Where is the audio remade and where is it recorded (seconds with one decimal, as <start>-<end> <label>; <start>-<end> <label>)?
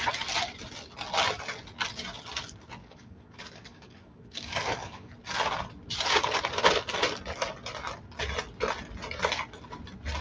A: 0.0-2.8 recorded; 2.8-5.1 remade; 5.1-10.2 recorded